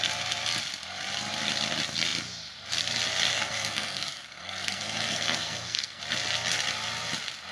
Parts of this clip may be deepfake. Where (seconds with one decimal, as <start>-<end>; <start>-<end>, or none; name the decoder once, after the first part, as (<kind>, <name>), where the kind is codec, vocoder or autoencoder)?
3.3-6.0 (codec, SNAC)